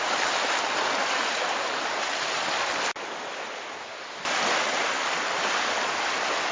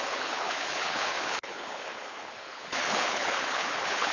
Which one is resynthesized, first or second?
second